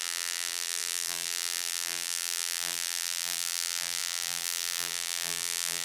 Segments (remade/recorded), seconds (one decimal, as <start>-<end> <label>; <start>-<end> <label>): 0.0-5.8 remade